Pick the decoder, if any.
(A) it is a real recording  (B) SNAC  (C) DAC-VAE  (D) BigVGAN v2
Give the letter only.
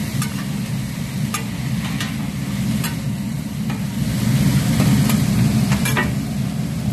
A